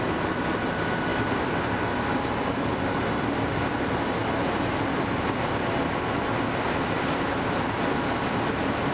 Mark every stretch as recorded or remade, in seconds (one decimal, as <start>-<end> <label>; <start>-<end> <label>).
0.0-8.9 recorded